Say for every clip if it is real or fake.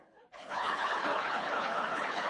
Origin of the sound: fake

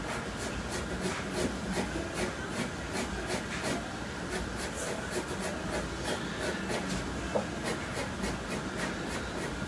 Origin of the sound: real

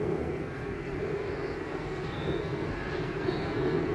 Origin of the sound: fake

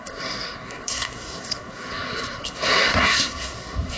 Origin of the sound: fake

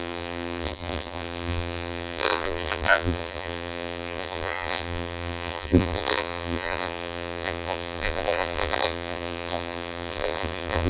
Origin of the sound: fake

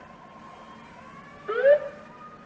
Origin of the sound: real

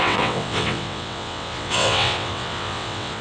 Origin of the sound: fake